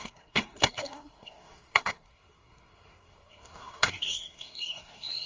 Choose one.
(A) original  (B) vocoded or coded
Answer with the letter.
B